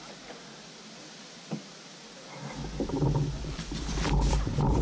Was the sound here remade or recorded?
recorded